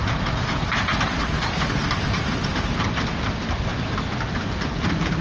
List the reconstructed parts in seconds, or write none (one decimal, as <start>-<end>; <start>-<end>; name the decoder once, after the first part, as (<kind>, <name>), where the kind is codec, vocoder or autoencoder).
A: none

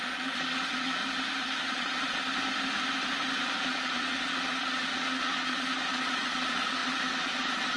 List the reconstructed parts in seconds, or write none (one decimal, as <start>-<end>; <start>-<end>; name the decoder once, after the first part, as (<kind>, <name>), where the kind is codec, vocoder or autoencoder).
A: 0.0-1.0 (vocoder, Vocos); 1.6-2.3; 3.4-7.8

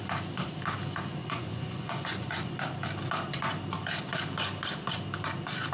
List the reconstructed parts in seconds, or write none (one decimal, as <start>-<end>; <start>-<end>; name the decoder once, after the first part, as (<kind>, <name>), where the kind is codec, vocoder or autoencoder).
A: 1.2-2.5 (vocoder, Vocos)

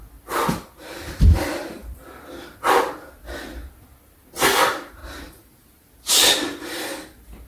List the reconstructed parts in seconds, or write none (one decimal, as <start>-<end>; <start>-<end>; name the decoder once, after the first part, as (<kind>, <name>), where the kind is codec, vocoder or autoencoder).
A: none

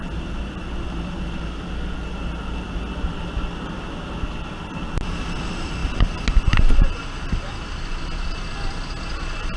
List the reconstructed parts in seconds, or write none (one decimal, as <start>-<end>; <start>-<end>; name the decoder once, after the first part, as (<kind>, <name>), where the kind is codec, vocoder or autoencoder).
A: none

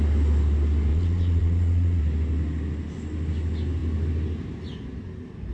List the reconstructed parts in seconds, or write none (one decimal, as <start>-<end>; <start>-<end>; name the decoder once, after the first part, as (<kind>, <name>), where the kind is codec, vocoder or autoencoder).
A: 0.9-2.0 (vocoder, Vocos)

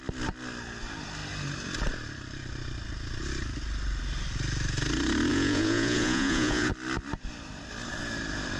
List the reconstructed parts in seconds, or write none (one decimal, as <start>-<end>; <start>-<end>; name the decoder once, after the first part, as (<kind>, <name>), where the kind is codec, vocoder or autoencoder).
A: 5.3-6.7 (vocoder, Vocos)

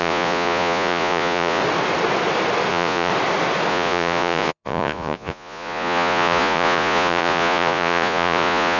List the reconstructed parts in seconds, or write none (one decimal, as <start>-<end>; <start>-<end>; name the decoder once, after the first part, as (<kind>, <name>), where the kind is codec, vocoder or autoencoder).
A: 0.0-1.6 (vocoder, Vocos); 2.7-3.1; 3.7-8.8